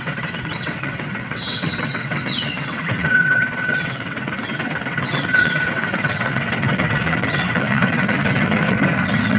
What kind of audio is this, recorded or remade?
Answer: remade